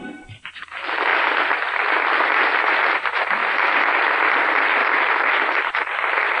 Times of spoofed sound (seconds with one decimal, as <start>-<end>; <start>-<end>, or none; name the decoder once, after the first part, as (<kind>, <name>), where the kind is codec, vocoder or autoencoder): 3.4-4.0 (vocoder, BigVGAN v2); 4.8-5.7